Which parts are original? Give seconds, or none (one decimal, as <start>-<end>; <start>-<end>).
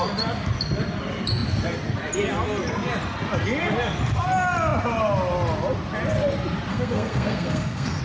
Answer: 0.0-6.7